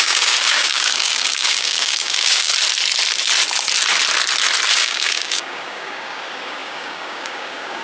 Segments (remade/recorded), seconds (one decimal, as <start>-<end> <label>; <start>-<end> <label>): 0.0-2.5 remade; 2.5-4.7 recorded; 4.7-7.8 remade